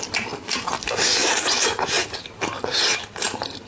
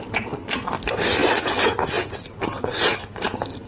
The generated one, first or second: first